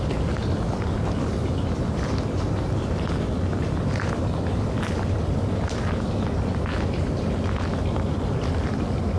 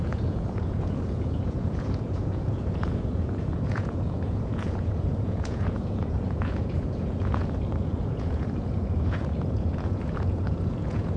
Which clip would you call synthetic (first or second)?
second